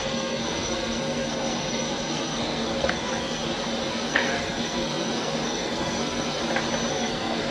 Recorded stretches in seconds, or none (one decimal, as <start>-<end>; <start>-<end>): 3.4-3.9; 6.4-6.9